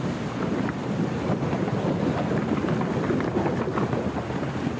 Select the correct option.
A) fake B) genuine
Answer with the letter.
B